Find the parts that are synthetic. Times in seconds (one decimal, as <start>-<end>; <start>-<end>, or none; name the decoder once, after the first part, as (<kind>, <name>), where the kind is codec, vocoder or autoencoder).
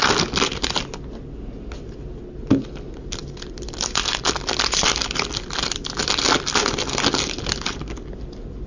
none